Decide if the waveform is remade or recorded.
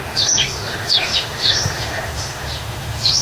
remade